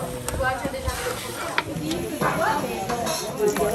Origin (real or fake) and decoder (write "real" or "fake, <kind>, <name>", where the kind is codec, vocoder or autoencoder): real